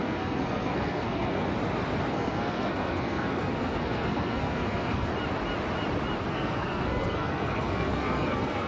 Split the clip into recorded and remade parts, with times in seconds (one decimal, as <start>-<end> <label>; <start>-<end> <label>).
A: 0.0-1.5 remade; 1.5-2.1 recorded; 2.1-5.1 remade; 5.1-6.3 recorded; 6.3-8.7 remade